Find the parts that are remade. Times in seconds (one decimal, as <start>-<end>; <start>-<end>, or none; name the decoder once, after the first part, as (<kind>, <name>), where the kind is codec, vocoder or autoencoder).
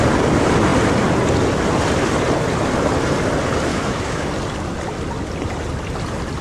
3.7-4.3 (autoencoder, DAC-VAE)